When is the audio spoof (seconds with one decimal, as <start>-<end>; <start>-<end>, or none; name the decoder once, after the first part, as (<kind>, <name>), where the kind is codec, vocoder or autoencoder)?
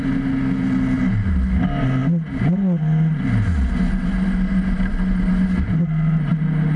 none